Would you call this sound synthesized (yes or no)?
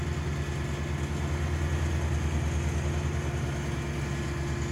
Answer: no